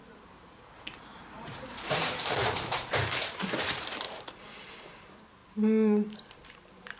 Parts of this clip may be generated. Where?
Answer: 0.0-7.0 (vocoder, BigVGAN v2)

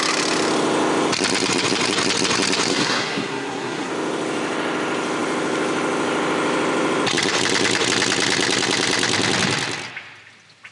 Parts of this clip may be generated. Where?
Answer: 2.7-3.9 (codec, SNAC)

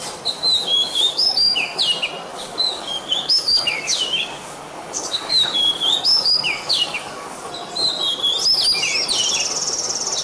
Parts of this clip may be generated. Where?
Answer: 0.6-1.8 (codec, DAC); 2.3-7.5

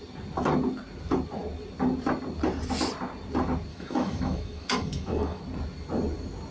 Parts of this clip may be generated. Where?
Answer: 3.7-5.4 (autoencoder, DAC-VAE)

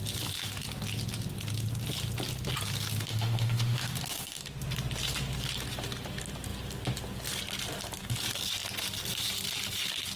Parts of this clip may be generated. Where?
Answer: 3.1-4.4 (autoencoder, DAC-VAE)

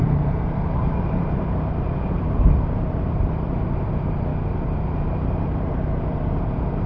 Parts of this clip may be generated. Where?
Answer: 0.0-4.3 (vocoder, BigVGAN v2); 5.0-6.9

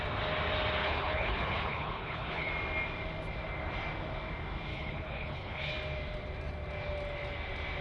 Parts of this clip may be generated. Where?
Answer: 0.8-2.5 (codec, HILCodec); 4.7-5.7

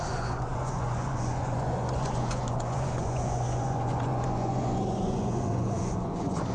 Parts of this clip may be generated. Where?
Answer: 0.0-6.5 (vocoder, Vocos)